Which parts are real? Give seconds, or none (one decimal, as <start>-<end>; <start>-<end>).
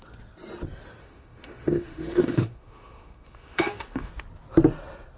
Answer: 0.0-1.0; 4.1-5.2